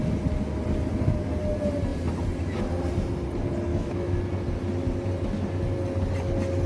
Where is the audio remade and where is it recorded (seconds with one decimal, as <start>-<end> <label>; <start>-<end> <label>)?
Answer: 0.0-3.7 recorded; 3.7-4.2 remade; 4.2-6.7 recorded